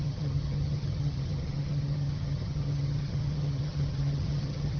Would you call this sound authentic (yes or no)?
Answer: no